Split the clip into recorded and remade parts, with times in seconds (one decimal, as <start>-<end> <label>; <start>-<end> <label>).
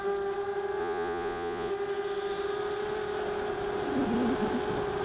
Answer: 0.0-0.8 recorded; 0.8-1.7 remade; 1.7-5.0 recorded